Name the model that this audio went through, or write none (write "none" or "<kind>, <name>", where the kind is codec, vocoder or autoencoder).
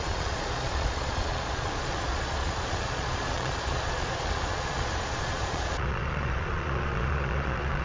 vocoder, Vocos